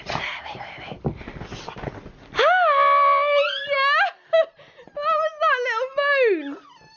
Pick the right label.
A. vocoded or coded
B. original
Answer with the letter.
B